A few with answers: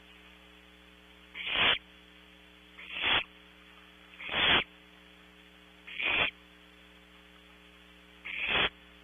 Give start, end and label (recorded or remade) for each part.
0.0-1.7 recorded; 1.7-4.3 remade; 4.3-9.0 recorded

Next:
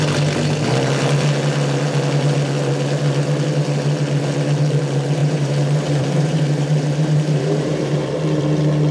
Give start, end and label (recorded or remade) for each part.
0.0-5.2 recorded; 5.2-8.4 remade; 8.4-8.9 recorded